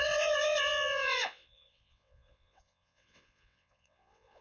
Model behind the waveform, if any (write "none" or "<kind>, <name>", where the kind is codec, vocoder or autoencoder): vocoder, WaveNeXt